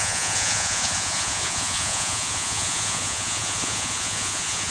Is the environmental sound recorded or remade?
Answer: remade